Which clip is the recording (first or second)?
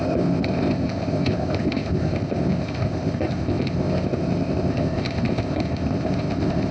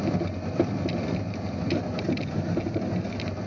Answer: second